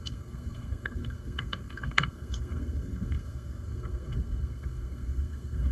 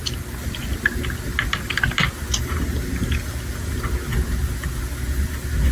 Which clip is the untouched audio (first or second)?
second